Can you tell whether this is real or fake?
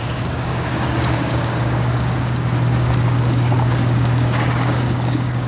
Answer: fake